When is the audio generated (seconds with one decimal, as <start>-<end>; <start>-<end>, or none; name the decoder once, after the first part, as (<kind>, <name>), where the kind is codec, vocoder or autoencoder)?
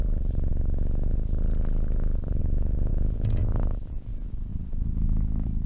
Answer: 0.0-0.5 (vocoder, Vocos); 1.1-5.7